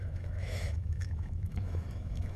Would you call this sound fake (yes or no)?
yes